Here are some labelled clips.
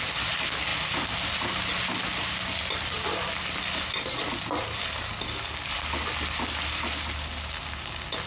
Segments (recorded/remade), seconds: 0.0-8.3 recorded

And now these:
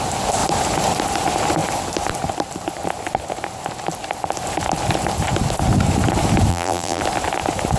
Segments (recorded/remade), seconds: 0.0-6.5 recorded; 6.5-7.0 remade; 7.0-7.8 recorded

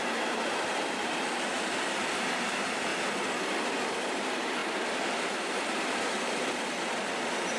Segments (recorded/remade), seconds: 0.0-2.9 remade; 2.9-3.8 recorded; 3.8-7.6 remade

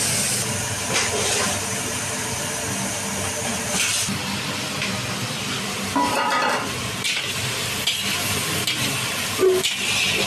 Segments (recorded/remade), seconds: 0.0-3.9 recorded; 3.9-7.2 remade; 7.2-10.3 recorded

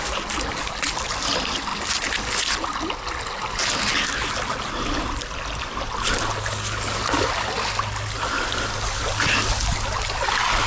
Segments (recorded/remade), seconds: 0.0-10.7 recorded